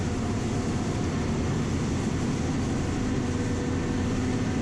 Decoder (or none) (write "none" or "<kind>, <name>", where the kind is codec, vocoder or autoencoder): none